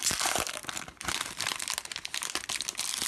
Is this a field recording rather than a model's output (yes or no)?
yes